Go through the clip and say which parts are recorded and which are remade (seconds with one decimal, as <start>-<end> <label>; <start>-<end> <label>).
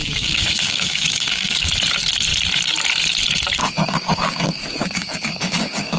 0.0-1.7 remade; 1.7-3.6 recorded; 3.6-6.0 remade